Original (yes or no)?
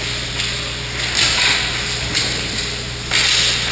yes